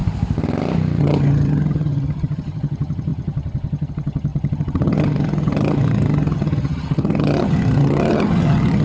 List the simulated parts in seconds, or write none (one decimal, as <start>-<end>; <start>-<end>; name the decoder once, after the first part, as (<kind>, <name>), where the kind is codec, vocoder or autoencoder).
1.0-8.8 (vocoder, HiFi-GAN)